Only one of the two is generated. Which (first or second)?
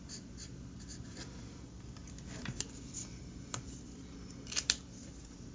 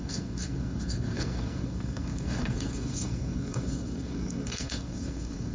second